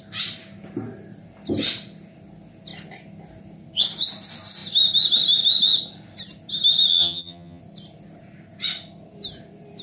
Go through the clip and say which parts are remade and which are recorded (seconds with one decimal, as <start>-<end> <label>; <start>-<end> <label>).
0.0-6.9 recorded; 6.9-7.6 remade; 7.6-9.8 recorded